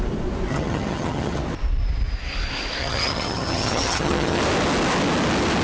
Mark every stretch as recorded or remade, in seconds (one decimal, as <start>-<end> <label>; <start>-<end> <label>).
0.0-0.5 recorded; 0.5-1.4 remade; 1.4-2.8 recorded; 2.8-4.4 remade; 4.4-5.6 recorded